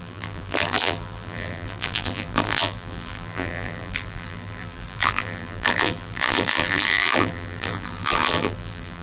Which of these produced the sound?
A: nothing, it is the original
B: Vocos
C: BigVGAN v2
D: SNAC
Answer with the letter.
C